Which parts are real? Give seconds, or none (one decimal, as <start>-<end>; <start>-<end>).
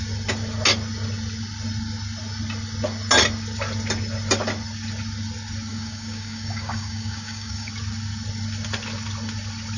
0.0-5.7; 7.7-9.8